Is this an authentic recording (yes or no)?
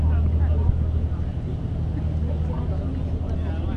yes